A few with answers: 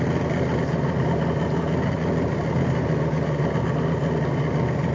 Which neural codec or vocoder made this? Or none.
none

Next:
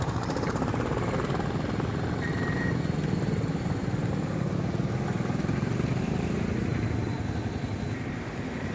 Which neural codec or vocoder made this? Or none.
none